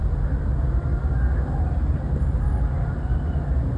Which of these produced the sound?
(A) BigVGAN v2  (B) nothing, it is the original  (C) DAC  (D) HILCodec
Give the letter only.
B